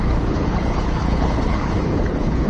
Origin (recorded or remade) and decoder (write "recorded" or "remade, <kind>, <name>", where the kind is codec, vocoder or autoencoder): remade, codec, HILCodec